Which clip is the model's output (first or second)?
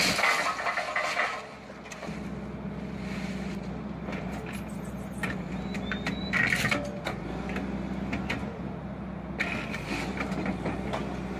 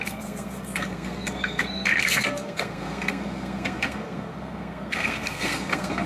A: second